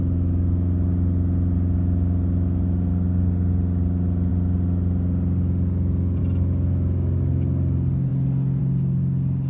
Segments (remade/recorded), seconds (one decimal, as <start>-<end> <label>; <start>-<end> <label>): 0.0-9.5 recorded